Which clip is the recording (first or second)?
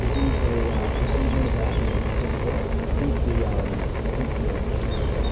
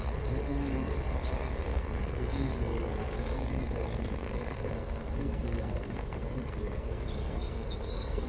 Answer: first